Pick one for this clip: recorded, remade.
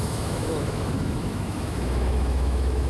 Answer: remade